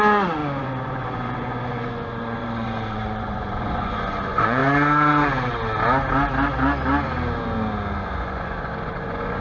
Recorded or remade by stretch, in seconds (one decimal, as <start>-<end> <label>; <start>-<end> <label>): 0.0-4.6 remade; 4.6-8.0 recorded; 8.0-9.4 remade